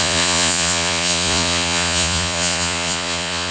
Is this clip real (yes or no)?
no